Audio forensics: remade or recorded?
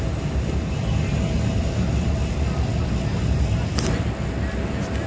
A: recorded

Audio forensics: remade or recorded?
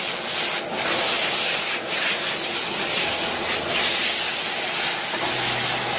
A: recorded